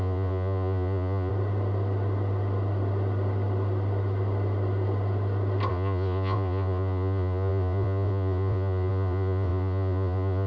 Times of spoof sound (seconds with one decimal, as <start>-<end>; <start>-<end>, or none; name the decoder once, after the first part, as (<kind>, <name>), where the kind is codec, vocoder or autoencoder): 0.0-1.3 (vocoder, Vocos); 5.7-10.5